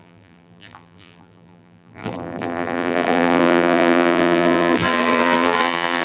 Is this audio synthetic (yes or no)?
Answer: yes